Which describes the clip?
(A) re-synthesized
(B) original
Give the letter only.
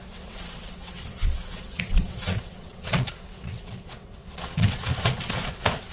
A